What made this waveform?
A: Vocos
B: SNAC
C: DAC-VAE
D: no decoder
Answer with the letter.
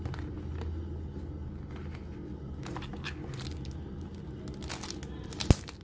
D